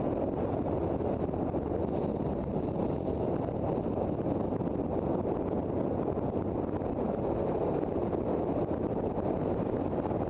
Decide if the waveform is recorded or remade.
recorded